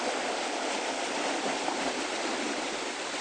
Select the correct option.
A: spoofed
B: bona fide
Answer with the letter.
B